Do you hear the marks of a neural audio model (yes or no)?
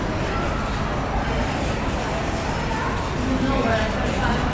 no